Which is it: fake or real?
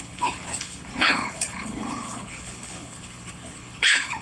fake